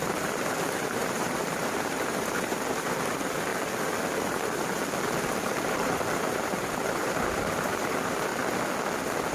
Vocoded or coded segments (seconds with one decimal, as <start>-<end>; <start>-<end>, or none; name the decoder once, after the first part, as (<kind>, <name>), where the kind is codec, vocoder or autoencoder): 0.0-3.5 (vocoder, BigVGAN v2); 4.0-4.8; 5.5-8.3